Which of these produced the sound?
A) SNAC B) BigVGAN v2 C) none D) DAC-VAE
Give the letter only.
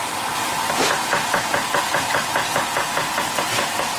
C